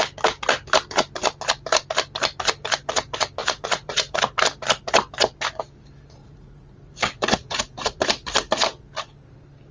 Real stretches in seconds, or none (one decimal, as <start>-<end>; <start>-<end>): 0.0-3.4; 4.2-6.2; 8.0-9.7